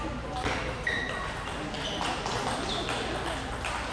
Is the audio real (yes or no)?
yes